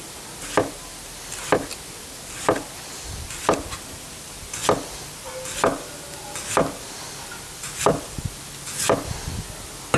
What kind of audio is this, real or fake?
real